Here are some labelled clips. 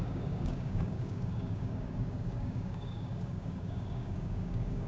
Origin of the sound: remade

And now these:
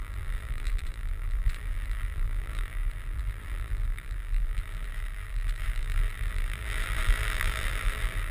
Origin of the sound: remade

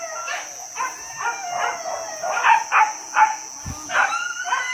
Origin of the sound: recorded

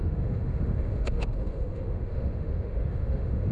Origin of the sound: remade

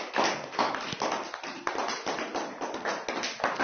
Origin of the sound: recorded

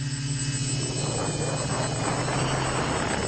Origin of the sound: recorded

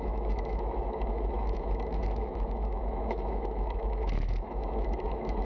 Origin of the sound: remade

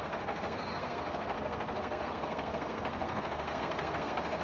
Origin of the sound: remade